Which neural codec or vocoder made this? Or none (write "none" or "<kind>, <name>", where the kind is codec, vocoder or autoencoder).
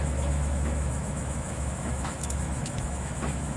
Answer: autoencoder, DAC-VAE